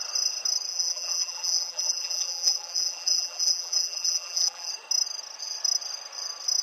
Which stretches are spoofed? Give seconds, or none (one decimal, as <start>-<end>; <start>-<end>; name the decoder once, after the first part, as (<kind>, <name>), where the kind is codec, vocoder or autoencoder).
0.7-4.7 (vocoder, BigVGAN v2)